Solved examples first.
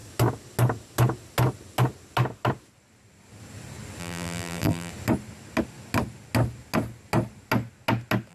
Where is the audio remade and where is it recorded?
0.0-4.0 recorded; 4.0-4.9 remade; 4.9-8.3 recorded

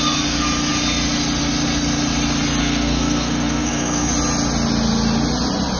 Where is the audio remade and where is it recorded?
0.0-2.6 recorded; 2.6-4.1 remade; 4.1-5.8 recorded

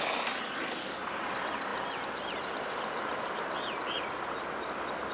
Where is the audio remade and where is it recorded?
0.0-5.1 recorded

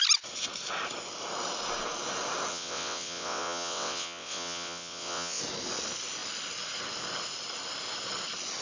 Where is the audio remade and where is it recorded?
0.0-2.5 recorded; 2.5-5.4 remade; 5.4-8.6 recorded

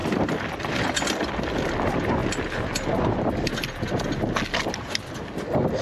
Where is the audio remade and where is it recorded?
0.0-5.8 recorded

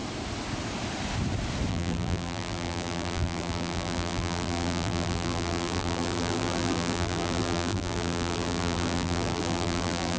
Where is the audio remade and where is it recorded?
0.0-1.7 recorded; 1.7-10.2 remade

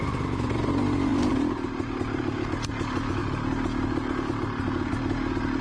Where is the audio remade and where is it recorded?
0.0-5.6 recorded